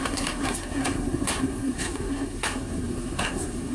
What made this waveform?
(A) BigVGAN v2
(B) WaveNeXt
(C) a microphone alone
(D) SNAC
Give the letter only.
D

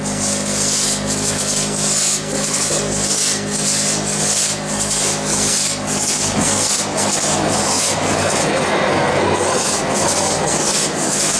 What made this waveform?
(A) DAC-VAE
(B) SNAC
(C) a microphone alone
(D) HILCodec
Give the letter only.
B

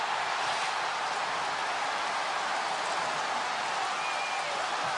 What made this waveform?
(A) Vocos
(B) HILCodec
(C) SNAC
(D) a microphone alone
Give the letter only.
D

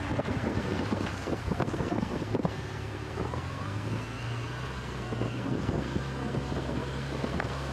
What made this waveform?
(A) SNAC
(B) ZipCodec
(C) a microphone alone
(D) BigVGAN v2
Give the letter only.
A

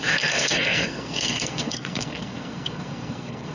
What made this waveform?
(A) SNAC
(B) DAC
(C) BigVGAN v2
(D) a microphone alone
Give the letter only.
A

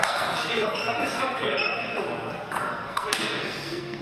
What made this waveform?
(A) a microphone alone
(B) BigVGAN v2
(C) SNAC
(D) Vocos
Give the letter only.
C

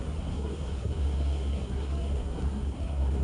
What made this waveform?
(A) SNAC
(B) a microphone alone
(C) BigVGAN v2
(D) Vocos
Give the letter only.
A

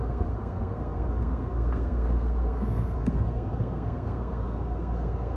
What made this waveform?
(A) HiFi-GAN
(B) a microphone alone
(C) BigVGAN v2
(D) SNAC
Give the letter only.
D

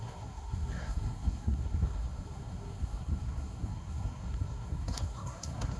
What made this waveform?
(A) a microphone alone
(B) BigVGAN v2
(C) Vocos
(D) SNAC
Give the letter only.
D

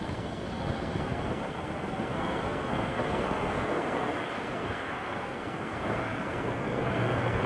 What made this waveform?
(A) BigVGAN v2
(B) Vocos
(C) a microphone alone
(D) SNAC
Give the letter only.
D